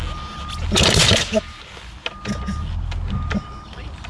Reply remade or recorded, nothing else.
recorded